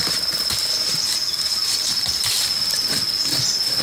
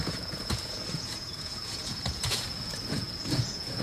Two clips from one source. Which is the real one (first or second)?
first